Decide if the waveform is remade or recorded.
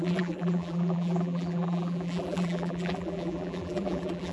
remade